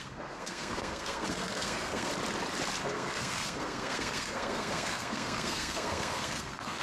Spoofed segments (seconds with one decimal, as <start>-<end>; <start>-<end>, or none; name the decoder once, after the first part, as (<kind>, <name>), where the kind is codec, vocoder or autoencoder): 0.0-2.1 (codec, SNAC); 2.8-6.8